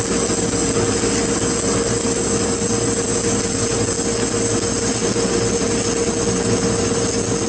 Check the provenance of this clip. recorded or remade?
recorded